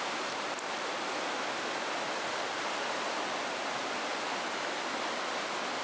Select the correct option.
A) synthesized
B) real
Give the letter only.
B